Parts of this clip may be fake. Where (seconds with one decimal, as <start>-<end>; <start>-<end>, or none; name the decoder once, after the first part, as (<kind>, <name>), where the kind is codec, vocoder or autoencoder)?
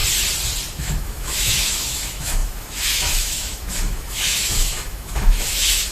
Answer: 0.7-5.9 (autoencoder, DAC-VAE)